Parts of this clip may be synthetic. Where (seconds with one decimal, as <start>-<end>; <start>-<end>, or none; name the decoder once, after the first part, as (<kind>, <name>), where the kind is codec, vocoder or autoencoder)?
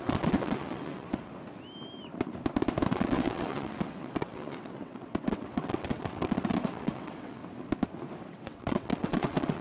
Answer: 0.0-1.3 (vocoder, WaveNeXt); 2.9-7.4; 8.3-9.6